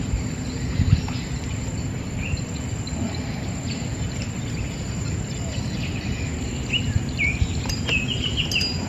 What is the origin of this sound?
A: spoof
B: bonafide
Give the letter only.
B